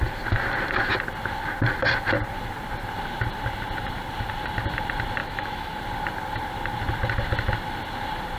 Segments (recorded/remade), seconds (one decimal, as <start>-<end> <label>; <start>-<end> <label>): 0.0-5.2 recorded; 5.2-5.8 remade; 5.8-8.4 recorded